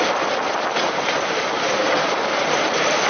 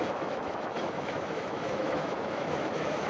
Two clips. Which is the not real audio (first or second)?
second